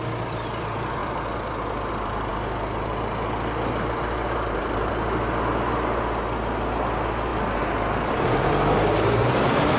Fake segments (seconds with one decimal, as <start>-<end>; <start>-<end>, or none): 0.0-2.3; 4.9-7.3; 8.1-9.8